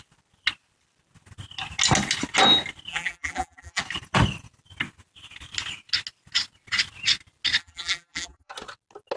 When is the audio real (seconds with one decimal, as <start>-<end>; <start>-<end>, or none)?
0.0-2.9; 3.8-7.6; 8.5-9.2